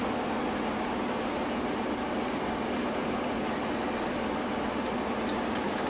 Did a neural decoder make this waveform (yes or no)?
no